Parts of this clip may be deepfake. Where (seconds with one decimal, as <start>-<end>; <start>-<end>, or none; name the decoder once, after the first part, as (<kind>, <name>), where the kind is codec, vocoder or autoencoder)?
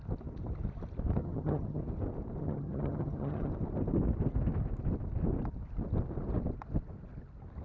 1.2-1.8 (vocoder, HiFi-GAN); 2.4-3.5